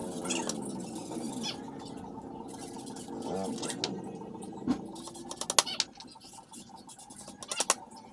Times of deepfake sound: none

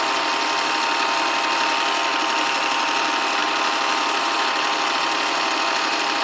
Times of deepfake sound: 3.4-6.2 (vocoder, BigVGAN v2)

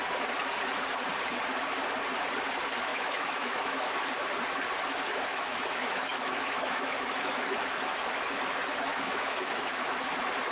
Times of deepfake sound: 2.9-4.1 (autoencoder, DAC-VAE); 5.3-7.6; 8.9-10.0

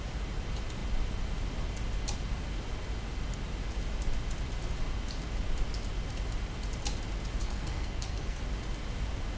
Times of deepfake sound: 7.4-8.4 (codec, SNAC)

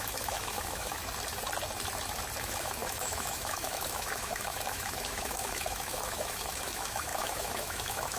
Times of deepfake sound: 0.0-1.0 (autoencoder, DAC-VAE); 2.4-8.2

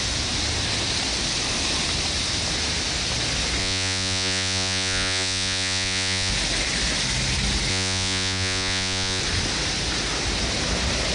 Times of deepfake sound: 3.6-6.3 (vocoder, Vocos); 7.7-9.2